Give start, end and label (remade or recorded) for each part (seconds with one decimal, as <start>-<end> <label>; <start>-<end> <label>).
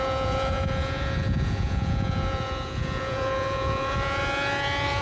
0.0-5.0 remade